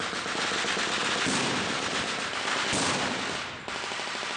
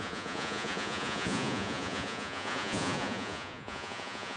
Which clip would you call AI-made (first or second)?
second